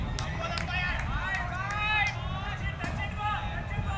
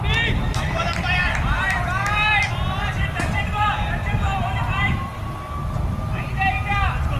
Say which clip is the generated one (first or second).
second